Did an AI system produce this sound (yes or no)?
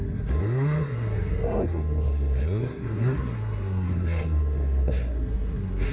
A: yes